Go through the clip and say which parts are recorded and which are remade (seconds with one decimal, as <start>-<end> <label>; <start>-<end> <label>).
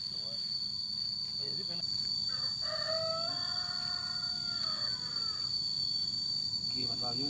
0.0-7.3 recorded